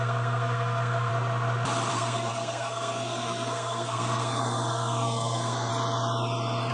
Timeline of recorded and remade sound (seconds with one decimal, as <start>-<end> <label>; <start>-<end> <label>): 0.0-1.1 remade; 1.1-1.9 recorded; 1.9-5.7 remade; 5.7-6.7 recorded